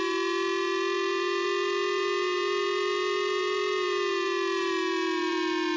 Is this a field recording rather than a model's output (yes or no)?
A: no